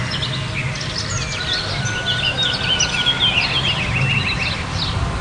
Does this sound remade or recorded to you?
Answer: recorded